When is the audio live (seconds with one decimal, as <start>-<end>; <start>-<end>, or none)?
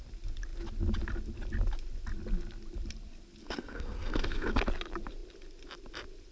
0.0-3.4; 4.6-6.3